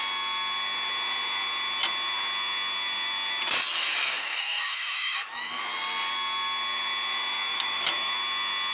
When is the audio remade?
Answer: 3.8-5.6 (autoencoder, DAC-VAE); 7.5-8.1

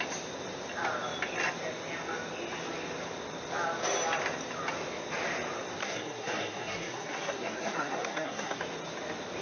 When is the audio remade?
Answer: 5.8-8.6 (codec, SNAC)

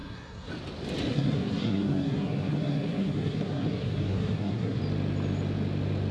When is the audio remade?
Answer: 0.0-0.5 (codec, SNAC); 1.1-4.8

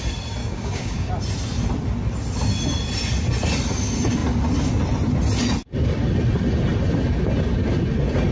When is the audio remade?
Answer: 0.4-1.1 (codec, DAC)

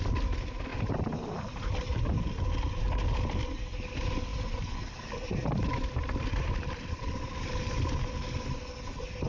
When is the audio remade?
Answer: 0.7-1.9 (vocoder, BigVGAN v2); 4.3-7.9

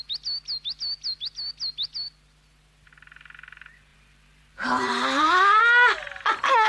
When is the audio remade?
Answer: 3.9-5.6 (vocoder, BigVGAN v2)